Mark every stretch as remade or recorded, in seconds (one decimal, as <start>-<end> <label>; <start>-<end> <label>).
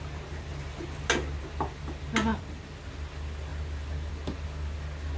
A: 0.0-5.2 recorded